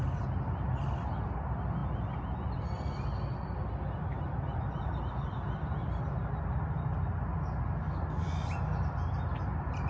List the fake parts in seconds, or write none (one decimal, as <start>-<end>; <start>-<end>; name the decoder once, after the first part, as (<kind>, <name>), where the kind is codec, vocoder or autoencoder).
none